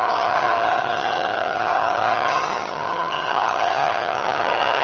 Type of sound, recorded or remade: remade